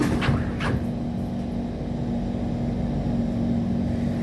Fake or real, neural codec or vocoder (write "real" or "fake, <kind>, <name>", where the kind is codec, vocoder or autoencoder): real